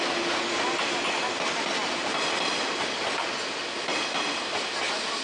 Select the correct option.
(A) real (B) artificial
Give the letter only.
A